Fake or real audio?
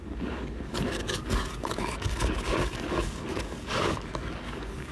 fake